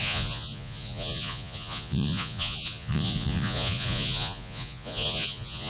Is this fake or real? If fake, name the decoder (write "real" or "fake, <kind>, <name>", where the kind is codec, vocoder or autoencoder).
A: fake, vocoder, Vocos